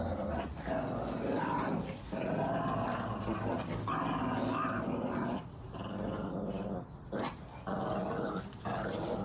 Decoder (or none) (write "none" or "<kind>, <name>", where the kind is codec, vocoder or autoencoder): none